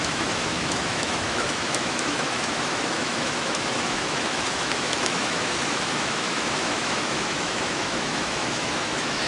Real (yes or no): no